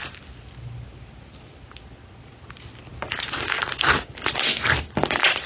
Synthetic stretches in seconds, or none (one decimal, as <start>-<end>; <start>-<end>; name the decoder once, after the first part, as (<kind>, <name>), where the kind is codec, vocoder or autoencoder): none